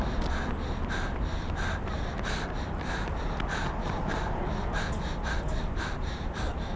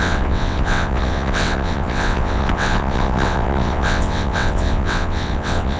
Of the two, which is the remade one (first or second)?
second